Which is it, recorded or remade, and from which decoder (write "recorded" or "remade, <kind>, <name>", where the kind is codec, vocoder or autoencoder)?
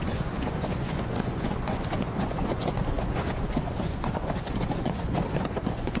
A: remade, vocoder, Vocos